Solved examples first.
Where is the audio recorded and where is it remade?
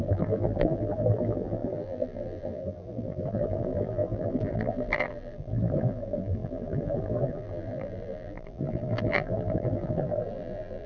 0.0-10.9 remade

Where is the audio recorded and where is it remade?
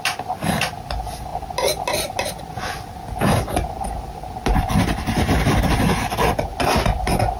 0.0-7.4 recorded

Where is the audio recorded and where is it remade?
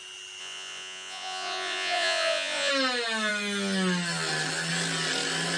0.0-0.4 recorded; 0.4-2.7 remade; 2.7-5.6 recorded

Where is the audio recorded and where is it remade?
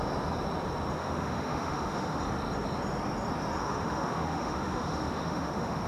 0.0-1.0 recorded; 1.0-2.2 remade; 2.2-3.6 recorded; 3.6-5.9 remade